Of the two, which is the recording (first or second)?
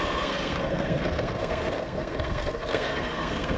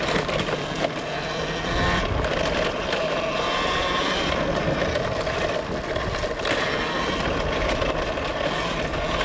second